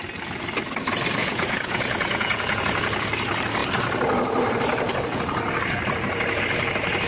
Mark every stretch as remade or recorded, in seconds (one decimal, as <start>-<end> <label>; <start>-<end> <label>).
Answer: 0.0-1.2 recorded; 1.2-2.6 remade; 2.6-7.1 recorded